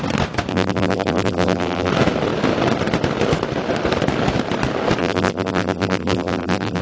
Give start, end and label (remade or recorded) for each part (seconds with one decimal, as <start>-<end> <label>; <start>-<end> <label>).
0.0-0.5 recorded; 0.5-1.9 remade; 1.9-5.0 recorded; 5.0-6.8 remade